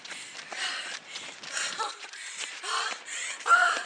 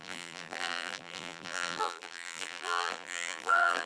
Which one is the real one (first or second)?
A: first